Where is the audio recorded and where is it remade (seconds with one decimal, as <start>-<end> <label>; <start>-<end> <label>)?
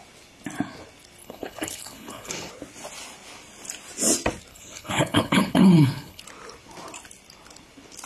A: 0.0-1.2 recorded; 1.2-2.5 remade; 2.5-4.5 recorded; 4.5-6.2 remade; 6.2-8.1 recorded